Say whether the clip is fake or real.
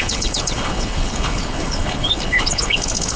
fake